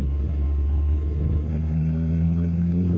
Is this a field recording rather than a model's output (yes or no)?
no